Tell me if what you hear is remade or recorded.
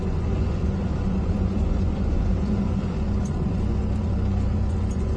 remade